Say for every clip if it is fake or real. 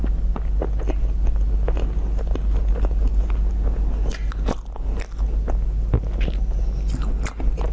real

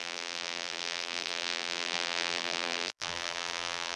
fake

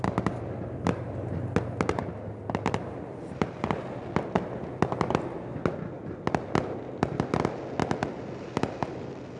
real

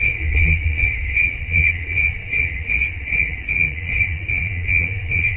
fake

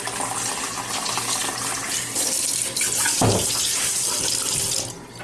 real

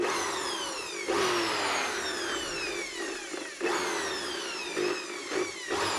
real